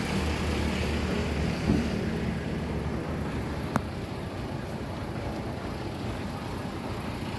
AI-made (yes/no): no